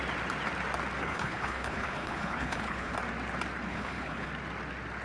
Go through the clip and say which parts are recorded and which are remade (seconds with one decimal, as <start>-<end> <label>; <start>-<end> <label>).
0.0-1.0 recorded; 1.0-2.9 remade; 2.9-3.7 recorded; 3.7-4.3 remade; 4.3-5.0 recorded